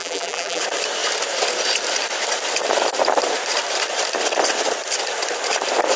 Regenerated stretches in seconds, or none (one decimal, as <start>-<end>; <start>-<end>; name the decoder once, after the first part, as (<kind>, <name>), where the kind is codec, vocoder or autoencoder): 0.0-0.6 (vocoder, BigVGAN v2)